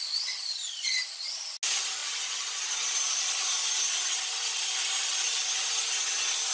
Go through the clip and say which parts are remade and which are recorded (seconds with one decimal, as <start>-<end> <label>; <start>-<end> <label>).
0.0-6.5 recorded